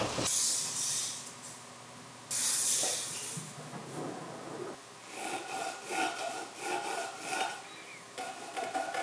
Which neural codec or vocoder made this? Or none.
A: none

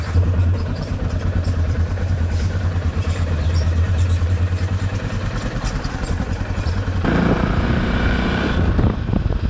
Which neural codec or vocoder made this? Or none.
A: vocoder, BigVGAN v2